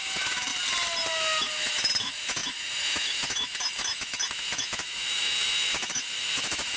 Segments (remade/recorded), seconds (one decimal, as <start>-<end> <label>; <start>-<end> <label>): 0.0-0.5 remade; 0.5-1.4 recorded; 1.4-6.8 remade